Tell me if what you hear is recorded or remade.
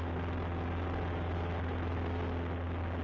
recorded